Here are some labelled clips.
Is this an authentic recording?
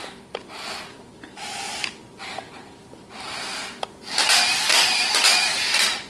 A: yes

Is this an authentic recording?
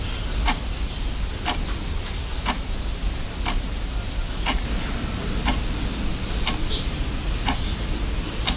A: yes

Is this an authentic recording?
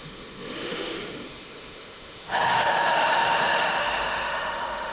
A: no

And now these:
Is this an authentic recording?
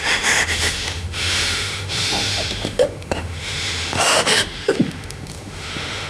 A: no